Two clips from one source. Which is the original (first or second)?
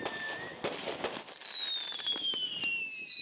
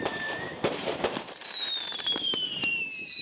first